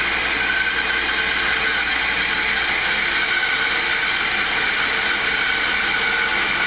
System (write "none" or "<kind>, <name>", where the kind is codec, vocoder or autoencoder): none